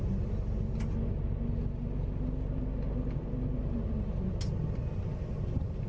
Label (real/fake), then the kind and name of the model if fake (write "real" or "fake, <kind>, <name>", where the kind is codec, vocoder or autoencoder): real